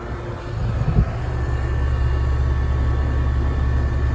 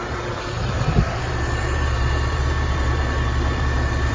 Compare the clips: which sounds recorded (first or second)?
first